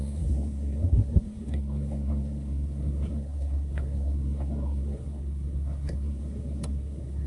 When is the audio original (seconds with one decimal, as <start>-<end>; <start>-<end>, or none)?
none